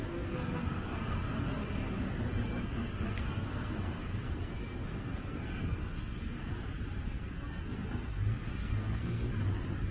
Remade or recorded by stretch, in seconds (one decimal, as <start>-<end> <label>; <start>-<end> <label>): 0.0-1.6 remade; 1.6-2.6 recorded; 2.6-6.5 remade; 6.5-7.0 recorded; 7.0-9.3 remade; 9.3-9.9 recorded